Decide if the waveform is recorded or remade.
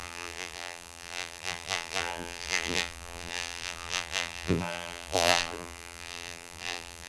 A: remade